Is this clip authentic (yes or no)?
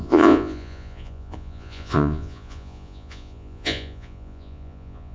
no